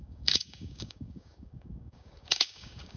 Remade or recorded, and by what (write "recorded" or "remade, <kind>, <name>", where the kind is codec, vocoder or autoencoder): remade, codec, DAC